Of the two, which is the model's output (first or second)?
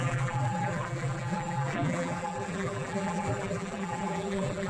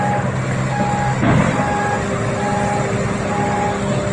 first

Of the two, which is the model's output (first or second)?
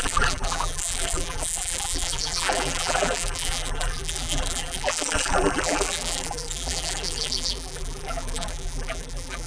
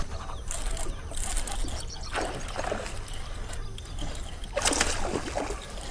first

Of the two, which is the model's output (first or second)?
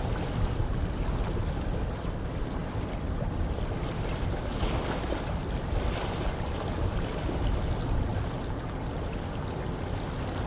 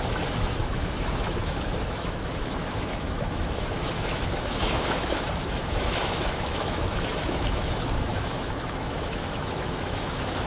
second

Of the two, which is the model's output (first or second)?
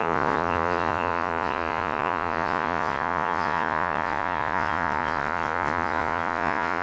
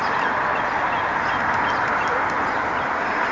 first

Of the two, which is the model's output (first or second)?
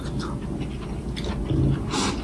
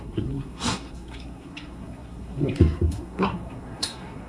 second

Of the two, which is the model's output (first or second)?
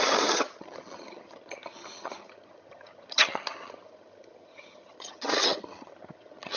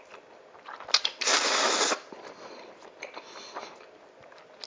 first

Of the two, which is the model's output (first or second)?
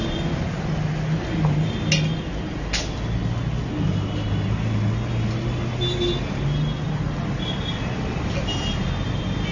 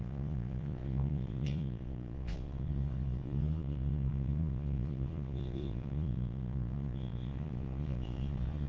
second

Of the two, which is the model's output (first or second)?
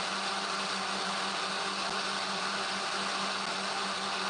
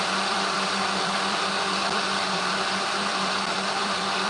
second